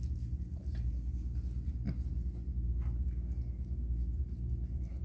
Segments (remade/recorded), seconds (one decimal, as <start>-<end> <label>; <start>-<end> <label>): 0.0-5.0 recorded